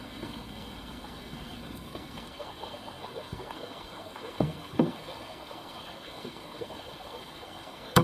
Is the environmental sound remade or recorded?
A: remade